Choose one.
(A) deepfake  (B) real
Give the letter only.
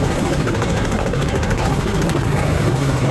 A